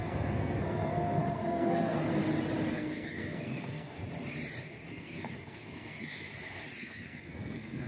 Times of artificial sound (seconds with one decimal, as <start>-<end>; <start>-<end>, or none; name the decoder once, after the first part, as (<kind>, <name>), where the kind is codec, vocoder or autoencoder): 0.0-2.1 (codec, SNAC); 2.7-4.0; 4.9-6.3; 6.8-7.9